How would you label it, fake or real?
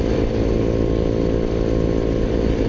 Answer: real